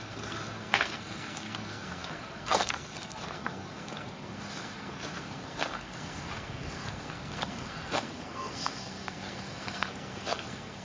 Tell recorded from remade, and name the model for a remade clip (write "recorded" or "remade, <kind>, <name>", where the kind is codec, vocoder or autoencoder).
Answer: remade, codec, SNAC